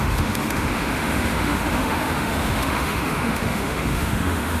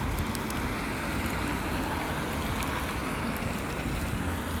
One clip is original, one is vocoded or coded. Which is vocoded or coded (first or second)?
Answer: first